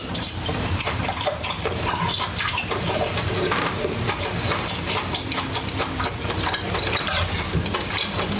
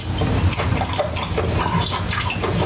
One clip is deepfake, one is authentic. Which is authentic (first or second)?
second